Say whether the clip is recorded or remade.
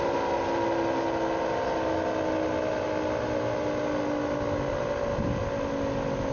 recorded